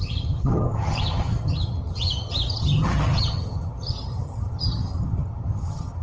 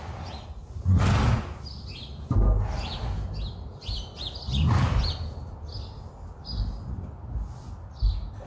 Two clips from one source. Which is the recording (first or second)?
second